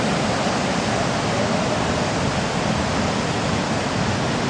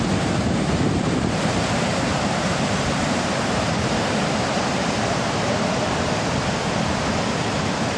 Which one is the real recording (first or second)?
first